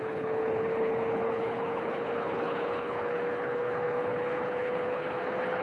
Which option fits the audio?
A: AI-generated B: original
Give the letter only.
A